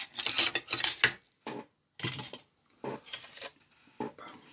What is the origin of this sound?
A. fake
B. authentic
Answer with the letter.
B